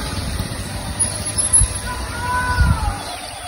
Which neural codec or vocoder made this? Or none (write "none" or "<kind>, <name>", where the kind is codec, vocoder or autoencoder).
none